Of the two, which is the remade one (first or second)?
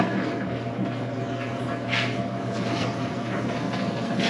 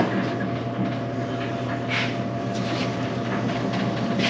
first